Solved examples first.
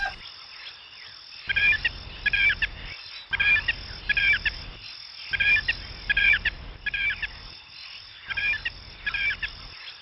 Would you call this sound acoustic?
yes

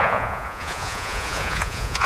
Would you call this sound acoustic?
no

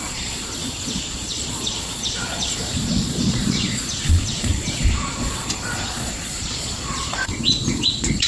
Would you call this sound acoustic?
no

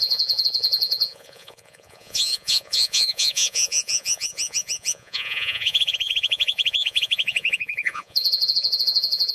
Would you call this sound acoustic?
no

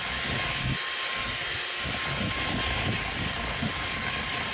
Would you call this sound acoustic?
yes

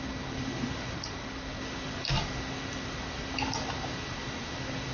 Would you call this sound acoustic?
yes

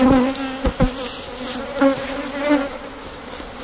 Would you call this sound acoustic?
yes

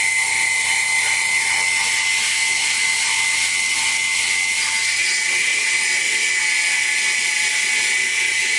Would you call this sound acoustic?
yes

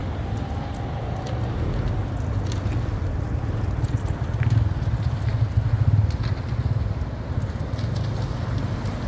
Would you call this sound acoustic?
yes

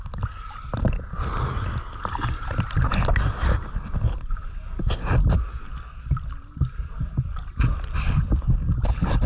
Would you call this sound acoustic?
yes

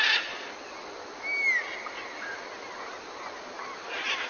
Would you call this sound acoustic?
yes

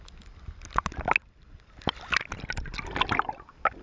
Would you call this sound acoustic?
yes